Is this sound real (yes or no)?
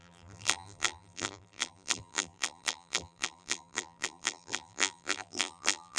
no